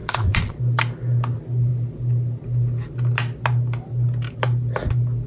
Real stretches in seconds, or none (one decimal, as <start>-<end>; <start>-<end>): 0.6-5.3